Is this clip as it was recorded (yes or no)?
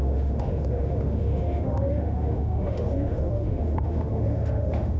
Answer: no